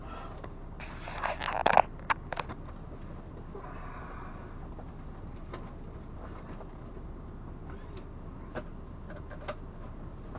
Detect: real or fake real